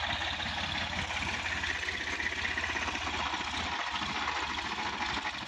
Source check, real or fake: real